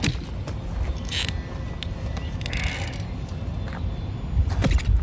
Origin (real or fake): real